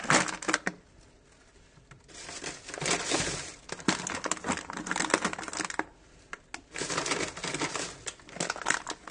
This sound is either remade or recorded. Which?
recorded